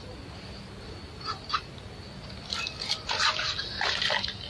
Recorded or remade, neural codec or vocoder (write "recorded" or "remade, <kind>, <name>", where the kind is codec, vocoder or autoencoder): recorded